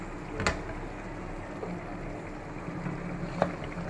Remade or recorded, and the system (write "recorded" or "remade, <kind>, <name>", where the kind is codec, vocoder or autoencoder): recorded